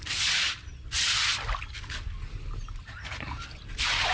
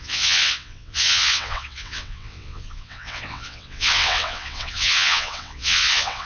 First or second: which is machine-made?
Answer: second